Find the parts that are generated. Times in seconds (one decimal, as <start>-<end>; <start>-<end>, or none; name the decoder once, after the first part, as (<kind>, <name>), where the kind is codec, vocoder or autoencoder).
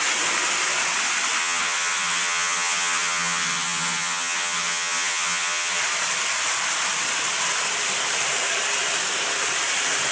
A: 1.4-5.8 (vocoder, HiFi-GAN)